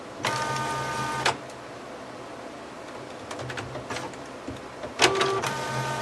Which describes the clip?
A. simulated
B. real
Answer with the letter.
B